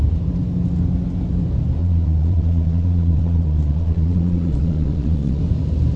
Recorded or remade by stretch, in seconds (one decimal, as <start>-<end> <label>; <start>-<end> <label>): 0.0-1.8 recorded; 1.8-5.4 remade; 5.4-6.0 recorded